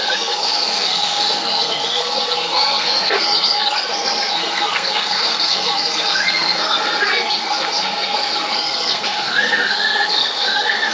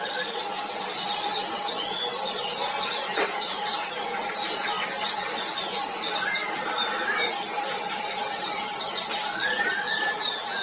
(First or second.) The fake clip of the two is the first